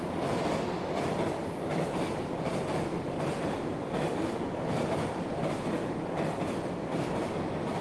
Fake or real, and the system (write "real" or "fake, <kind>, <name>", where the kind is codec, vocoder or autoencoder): real